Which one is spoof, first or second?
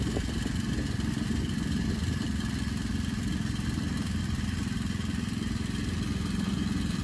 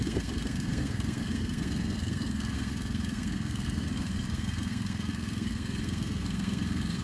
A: second